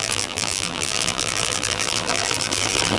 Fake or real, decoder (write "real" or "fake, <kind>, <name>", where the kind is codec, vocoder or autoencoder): fake, vocoder, BigVGAN v2